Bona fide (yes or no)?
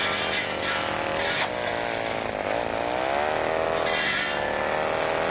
yes